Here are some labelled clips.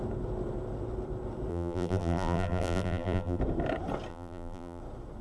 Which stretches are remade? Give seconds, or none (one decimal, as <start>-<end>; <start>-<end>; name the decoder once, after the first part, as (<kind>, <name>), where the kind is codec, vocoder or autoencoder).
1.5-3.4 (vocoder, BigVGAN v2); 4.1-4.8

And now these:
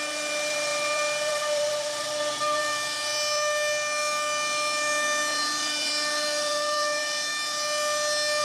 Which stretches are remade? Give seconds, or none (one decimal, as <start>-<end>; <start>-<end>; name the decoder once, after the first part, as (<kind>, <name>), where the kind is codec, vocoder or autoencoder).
0.0-3.1 (vocoder, BigVGAN v2); 5.4-7.3

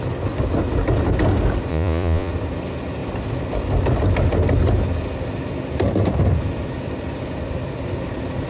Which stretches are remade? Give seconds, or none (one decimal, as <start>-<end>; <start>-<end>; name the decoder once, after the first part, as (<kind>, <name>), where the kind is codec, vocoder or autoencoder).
1.7-2.3 (vocoder, Vocos)